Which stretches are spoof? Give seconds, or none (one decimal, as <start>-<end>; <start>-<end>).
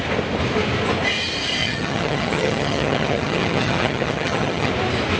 1.6-4.7